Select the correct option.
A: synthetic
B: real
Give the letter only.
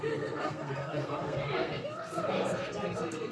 A